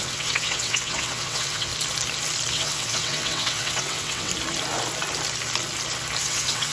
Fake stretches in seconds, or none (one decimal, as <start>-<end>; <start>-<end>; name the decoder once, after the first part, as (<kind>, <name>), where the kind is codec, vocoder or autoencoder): 0.0-1.7 (vocoder, WaveNeXt); 2.5-4.3; 6.2-6.7